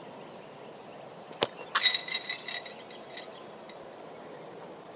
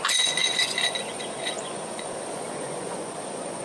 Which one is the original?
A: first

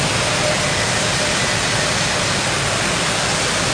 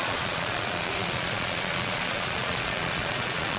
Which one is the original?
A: first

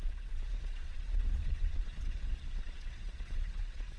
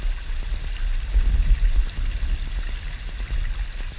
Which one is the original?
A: second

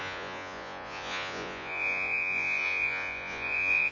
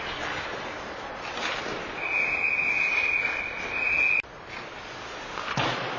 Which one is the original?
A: second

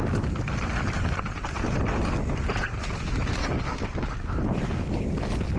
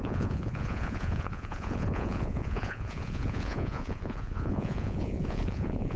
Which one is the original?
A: first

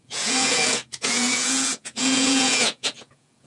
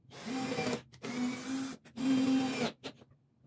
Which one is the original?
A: second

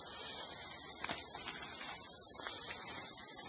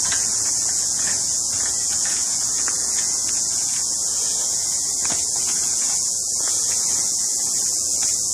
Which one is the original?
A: first